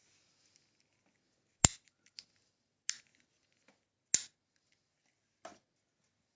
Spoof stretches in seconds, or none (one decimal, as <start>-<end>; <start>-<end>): none